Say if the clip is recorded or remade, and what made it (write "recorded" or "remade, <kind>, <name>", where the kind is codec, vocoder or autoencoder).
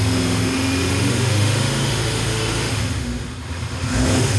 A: remade, autoencoder, DAC-VAE